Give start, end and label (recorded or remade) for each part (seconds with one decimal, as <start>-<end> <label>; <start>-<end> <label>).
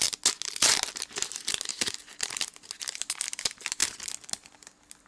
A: 0.0-5.1 recorded